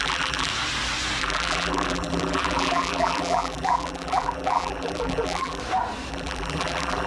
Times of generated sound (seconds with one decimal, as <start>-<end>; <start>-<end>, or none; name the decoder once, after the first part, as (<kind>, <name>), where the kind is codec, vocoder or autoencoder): 0.0-0.5 (vocoder, BigVGAN v2); 1.2-5.6; 6.1-7.1